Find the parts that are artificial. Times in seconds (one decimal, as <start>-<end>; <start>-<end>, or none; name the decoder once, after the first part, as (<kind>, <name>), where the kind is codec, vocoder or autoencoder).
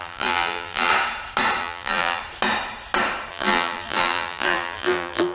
0.0-0.9 (vocoder, BigVGAN v2); 1.6-2.2; 3.3-5.3